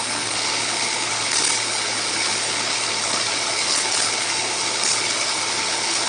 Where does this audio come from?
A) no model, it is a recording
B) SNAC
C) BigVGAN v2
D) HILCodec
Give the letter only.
D